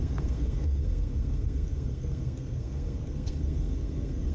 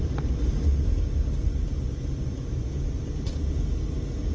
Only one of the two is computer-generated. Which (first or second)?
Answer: first